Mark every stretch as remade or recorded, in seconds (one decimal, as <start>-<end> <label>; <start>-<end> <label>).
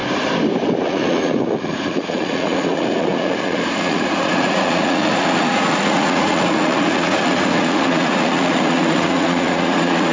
0.0-0.8 recorded; 0.8-10.1 remade